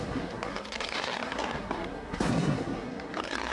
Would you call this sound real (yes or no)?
no